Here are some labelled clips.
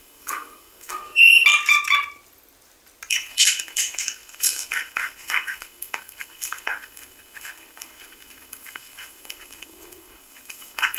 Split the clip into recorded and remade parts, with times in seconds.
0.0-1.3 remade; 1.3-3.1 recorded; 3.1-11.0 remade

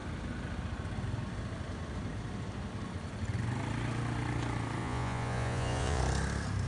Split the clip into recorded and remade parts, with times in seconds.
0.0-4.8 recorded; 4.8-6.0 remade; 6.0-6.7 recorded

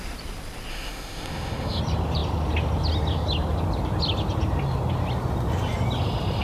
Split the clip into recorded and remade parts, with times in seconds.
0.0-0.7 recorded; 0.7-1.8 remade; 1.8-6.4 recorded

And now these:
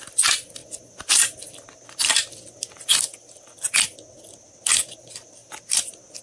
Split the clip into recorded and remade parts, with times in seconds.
0.0-6.2 recorded

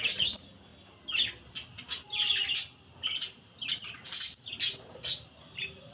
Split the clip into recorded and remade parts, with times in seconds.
0.0-5.9 recorded

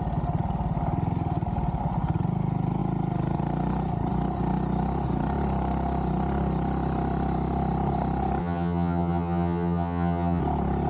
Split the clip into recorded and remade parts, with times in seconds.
0.0-8.4 recorded; 8.4-10.4 remade; 10.4-10.9 recorded

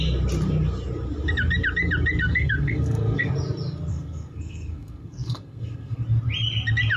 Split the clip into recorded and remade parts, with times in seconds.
0.0-2.2 recorded; 2.2-3.3 remade; 3.3-3.9 recorded; 3.9-6.0 remade; 6.0-7.0 recorded

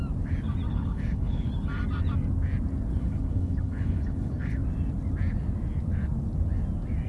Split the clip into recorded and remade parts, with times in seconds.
0.0-0.7 recorded; 0.7-1.5 remade; 1.5-2.9 recorded; 2.9-4.6 remade; 4.6-7.1 recorded